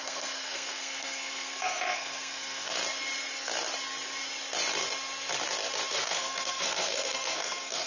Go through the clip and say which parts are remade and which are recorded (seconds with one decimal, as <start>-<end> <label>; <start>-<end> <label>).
0.0-2.7 remade; 2.7-5.9 recorded; 5.9-7.9 remade